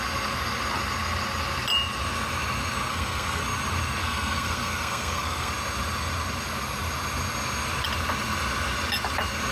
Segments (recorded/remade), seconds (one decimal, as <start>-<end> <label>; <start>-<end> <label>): 0.0-2.9 recorded; 2.9-3.4 remade; 3.4-4.0 recorded; 4.0-5.5 remade; 5.5-9.5 recorded